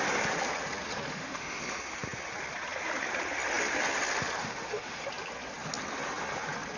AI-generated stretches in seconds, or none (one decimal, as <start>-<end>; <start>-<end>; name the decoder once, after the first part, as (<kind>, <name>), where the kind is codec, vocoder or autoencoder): 1.1-1.6 (autoencoder, DAC-VAE); 4.4-5.1